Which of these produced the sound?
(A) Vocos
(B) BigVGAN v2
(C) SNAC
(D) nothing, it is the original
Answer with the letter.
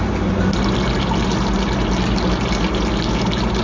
D